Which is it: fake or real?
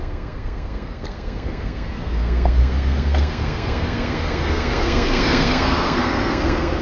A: fake